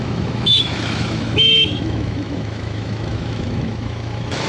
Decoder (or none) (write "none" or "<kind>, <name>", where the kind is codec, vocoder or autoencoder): autoencoder, DAC-VAE